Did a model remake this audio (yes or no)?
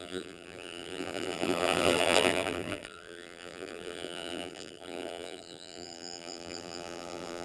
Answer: yes